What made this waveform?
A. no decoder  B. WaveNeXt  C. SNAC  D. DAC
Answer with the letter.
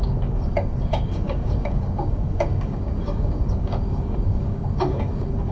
D